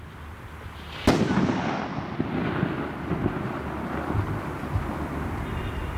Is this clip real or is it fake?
real